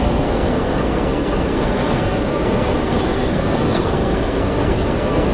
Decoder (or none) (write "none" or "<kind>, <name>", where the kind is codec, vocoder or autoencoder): codec, SNAC